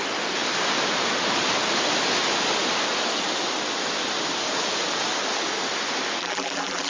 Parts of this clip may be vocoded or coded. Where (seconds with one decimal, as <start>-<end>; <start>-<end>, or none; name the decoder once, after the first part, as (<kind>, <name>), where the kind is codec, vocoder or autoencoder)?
6.2-6.9 (vocoder, BigVGAN v2)